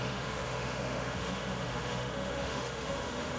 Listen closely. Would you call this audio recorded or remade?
remade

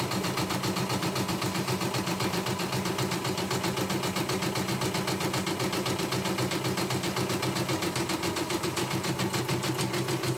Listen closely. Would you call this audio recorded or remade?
recorded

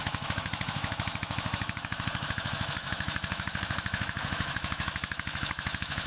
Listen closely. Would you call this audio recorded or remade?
remade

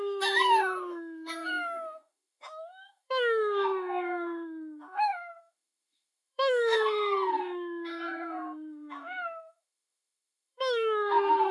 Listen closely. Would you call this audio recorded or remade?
remade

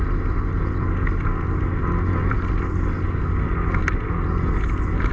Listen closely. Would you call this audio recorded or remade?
recorded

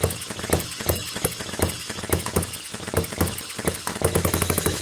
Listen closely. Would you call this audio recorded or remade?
remade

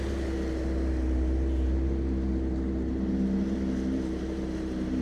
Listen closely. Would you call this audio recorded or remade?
recorded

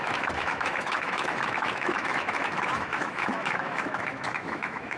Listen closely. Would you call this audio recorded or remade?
remade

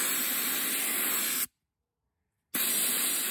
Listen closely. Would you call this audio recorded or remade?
recorded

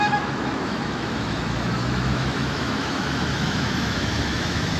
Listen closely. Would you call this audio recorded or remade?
remade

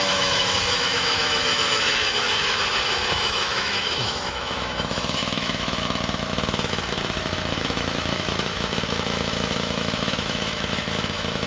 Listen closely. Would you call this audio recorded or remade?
remade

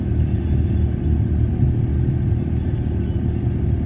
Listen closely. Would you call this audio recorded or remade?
recorded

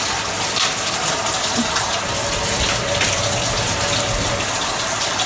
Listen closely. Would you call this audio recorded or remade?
recorded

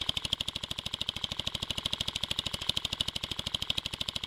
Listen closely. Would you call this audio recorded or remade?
recorded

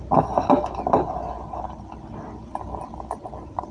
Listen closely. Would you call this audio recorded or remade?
recorded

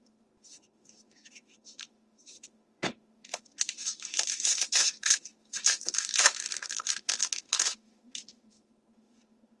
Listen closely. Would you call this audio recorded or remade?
remade